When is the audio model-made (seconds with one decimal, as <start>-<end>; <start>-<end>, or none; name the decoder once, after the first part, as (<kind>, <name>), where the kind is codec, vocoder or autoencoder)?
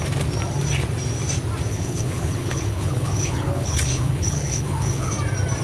1.7-5.1 (codec, HILCodec)